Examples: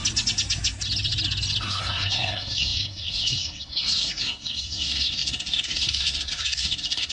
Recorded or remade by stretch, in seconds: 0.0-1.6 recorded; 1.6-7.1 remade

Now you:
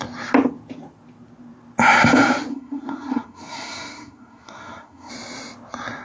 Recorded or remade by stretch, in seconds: 0.0-2.5 recorded; 2.5-5.1 remade; 5.1-6.0 recorded

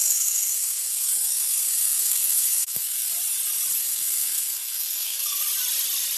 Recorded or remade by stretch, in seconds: 0.0-3.1 remade; 3.1-3.8 recorded; 3.8-5.4 remade; 5.4-6.2 recorded